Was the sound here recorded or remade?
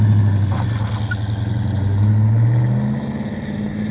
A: recorded